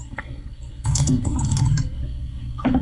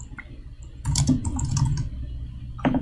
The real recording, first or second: second